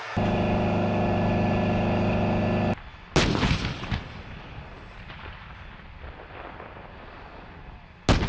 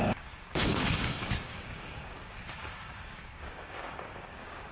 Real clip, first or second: first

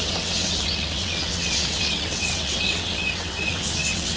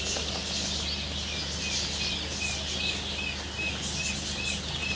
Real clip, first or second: second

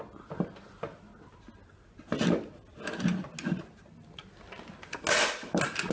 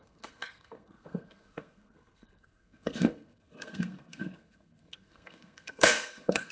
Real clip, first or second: first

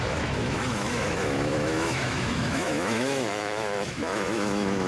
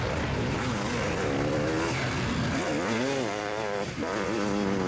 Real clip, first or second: second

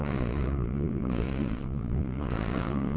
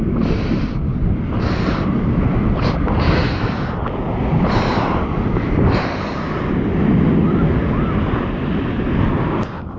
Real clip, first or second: second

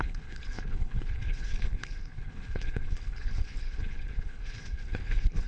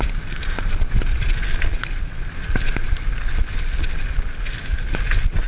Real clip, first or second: second